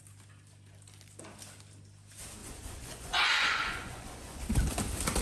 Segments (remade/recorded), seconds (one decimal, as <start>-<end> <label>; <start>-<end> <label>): 0.0-2.4 recorded; 2.4-4.4 remade; 4.4-5.2 recorded